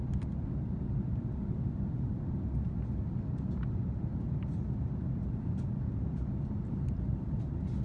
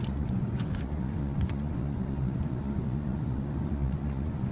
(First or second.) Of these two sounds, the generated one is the second